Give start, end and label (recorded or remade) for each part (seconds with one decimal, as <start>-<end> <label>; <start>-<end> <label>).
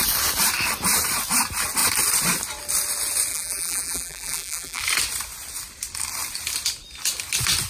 0.0-3.3 recorded; 3.3-4.8 remade; 4.8-7.7 recorded